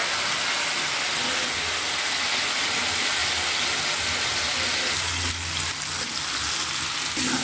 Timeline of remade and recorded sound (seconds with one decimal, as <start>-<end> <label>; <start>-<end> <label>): 0.0-7.4 recorded